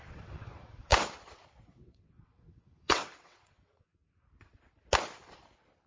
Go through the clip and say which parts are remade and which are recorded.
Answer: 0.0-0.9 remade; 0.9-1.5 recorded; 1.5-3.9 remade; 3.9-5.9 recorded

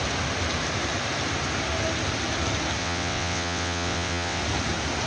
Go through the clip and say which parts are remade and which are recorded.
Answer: 0.0-2.8 recorded; 2.8-4.4 remade; 4.4-5.1 recorded

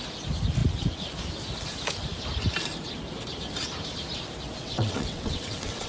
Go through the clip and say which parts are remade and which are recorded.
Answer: 0.0-4.6 recorded; 4.6-5.9 remade

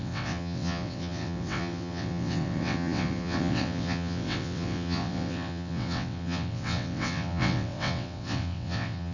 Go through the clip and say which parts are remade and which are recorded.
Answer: 0.0-9.1 remade